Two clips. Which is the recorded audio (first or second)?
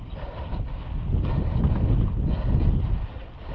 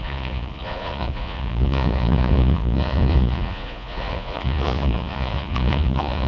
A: first